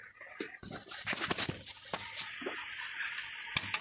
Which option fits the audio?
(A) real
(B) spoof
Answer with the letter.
A